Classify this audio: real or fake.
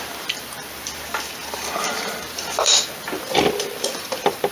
fake